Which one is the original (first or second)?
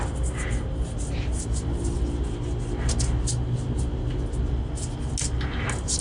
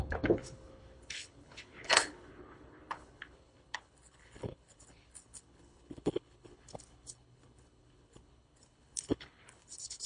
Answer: first